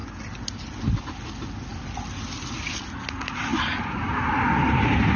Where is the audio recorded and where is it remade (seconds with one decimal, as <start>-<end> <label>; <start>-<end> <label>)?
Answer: 0.0-5.2 recorded